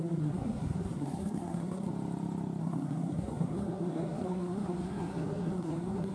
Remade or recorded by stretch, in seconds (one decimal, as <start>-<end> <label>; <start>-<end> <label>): 0.0-1.9 remade; 1.9-2.6 recorded; 2.6-6.1 remade